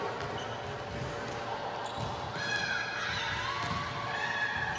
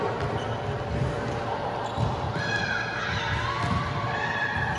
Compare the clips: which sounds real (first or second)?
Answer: first